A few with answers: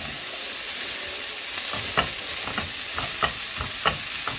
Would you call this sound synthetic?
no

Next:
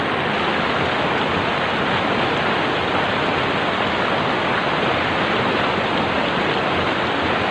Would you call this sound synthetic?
no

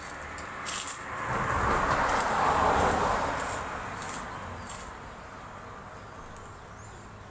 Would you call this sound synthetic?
no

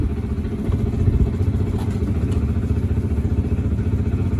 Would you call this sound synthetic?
no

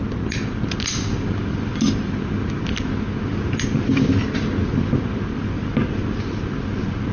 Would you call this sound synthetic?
no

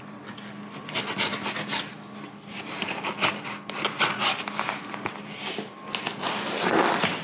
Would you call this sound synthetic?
no